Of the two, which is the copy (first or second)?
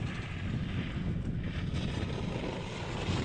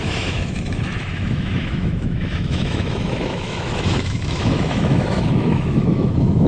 second